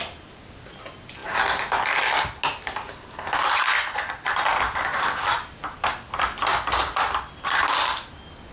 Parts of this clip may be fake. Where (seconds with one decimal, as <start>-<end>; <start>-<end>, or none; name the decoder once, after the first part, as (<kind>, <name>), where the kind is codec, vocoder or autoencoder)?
none